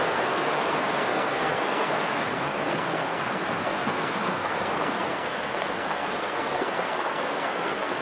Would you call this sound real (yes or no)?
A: no